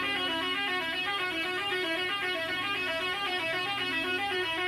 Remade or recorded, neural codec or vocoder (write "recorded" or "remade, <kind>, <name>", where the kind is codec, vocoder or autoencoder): remade, vocoder, BigVGAN v2